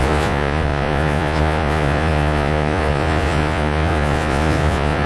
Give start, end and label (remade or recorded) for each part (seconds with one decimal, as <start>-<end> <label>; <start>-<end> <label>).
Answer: 0.0-5.1 remade

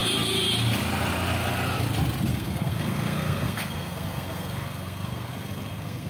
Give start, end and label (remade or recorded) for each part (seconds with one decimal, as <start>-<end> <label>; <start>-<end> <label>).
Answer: 0.0-2.3 recorded; 2.3-6.1 remade

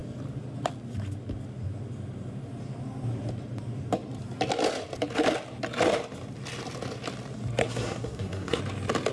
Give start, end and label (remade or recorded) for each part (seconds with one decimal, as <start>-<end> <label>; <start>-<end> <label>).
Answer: 0.0-7.6 recorded; 7.6-8.6 remade; 8.6-9.1 recorded